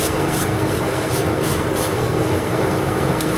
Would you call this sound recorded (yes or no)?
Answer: no